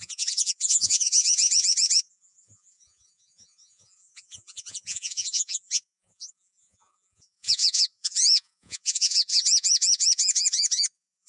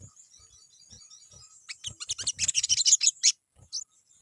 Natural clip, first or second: second